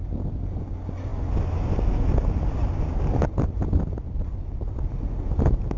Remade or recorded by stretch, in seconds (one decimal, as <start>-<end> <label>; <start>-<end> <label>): 0.0-5.8 recorded